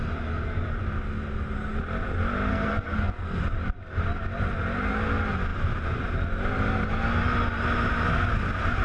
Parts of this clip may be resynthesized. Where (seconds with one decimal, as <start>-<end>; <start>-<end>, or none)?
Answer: 2.5-3.4